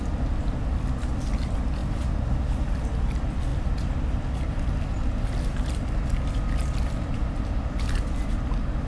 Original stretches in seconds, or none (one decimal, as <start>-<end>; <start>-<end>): 0.0-8.9

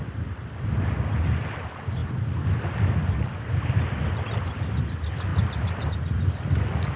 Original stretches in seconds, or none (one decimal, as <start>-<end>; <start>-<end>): 0.0-7.0

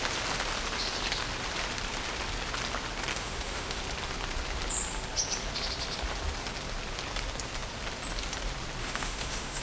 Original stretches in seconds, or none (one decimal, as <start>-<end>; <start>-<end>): 0.0-3.1; 3.8-8.8

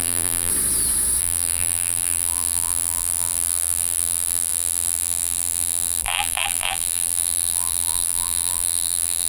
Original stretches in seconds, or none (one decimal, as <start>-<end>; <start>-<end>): 0.5-1.2

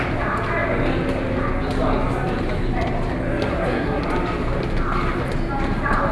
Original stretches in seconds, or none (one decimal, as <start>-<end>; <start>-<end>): 0.0-3.5; 4.0-6.1

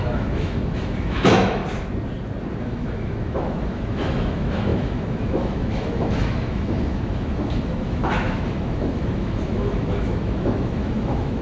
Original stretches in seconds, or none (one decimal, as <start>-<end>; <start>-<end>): 1.6-2.6

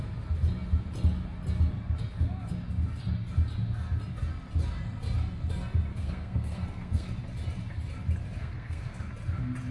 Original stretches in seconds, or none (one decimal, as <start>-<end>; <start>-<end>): 0.0-5.9; 7.1-8.4; 9.1-9.7